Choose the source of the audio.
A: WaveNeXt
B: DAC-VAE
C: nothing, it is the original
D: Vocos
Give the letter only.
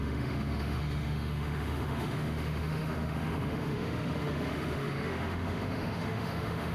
B